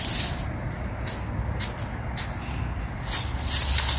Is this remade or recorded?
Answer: recorded